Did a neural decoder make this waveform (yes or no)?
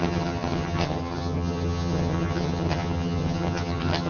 yes